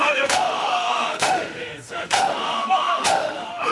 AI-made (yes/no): yes